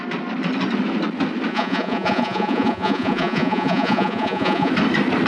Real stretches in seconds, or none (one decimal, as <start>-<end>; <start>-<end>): 0.0-1.5; 4.7-5.3